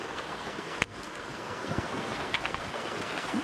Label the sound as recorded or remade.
remade